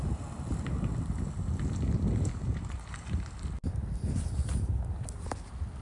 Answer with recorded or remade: recorded